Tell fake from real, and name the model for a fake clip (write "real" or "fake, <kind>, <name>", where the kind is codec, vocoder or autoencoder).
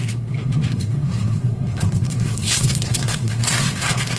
fake, codec, SNAC